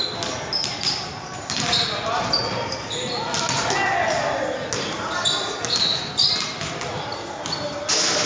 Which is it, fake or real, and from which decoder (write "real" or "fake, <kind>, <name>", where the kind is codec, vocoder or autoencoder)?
real